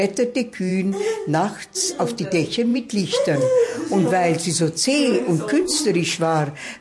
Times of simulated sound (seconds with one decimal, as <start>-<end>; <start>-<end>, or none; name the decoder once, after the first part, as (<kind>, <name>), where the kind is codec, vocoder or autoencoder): 2.7-4.1 (vocoder, Vocos)